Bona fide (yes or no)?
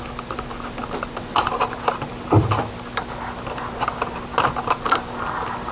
yes